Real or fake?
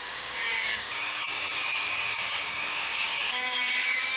fake